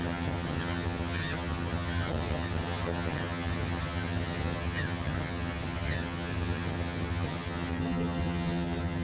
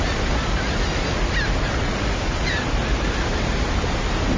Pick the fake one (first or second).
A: first